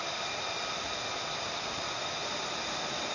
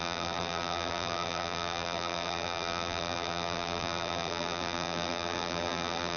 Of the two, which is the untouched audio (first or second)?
first